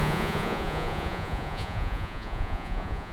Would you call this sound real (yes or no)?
no